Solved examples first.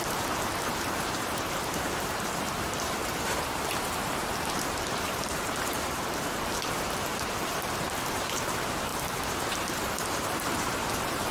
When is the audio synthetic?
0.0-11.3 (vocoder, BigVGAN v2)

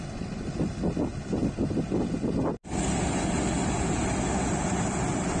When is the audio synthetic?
none

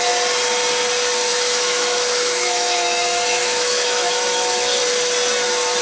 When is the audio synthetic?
1.3-4.8 (autoencoder, DAC-VAE)

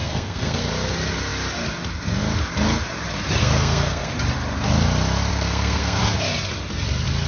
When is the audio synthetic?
0.0-0.7 (codec, SNAC); 3.4-4.1; 5.3-6.0

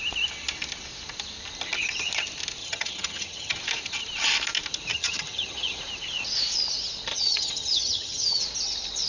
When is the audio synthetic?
2.6-3.6 (vocoder, HiFi-GAN); 4.9-5.8; 7.1-8.4